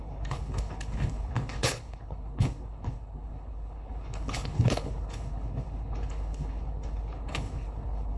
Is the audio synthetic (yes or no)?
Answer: yes